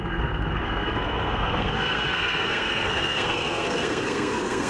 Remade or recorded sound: remade